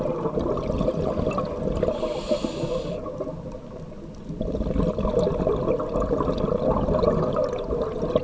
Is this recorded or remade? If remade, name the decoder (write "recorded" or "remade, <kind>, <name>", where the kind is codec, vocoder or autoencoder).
recorded